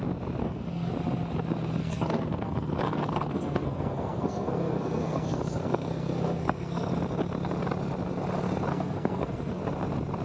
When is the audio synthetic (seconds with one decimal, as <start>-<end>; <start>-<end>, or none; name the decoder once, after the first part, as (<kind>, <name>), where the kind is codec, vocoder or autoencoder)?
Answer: 0.4-0.9 (codec, SNAC); 1.8-6.9; 8.7-9.6